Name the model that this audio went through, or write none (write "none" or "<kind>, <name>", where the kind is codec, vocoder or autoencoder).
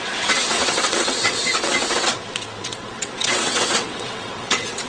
vocoder, WaveNeXt